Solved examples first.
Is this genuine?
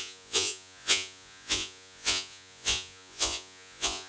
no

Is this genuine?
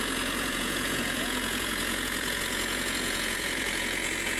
no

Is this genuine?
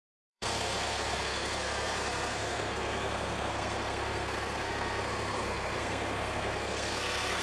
no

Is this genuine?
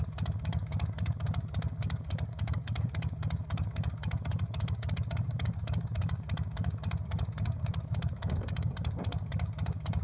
no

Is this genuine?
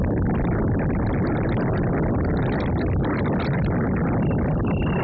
yes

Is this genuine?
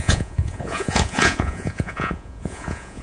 no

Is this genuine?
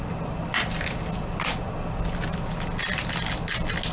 yes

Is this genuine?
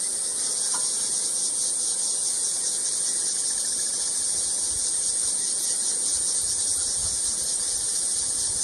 no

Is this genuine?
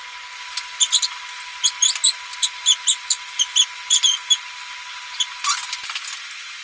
yes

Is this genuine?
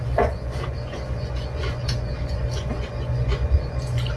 no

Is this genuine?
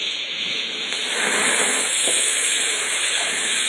no